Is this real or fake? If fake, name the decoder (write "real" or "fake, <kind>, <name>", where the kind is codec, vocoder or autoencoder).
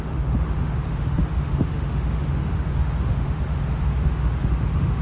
fake, autoencoder, DAC-VAE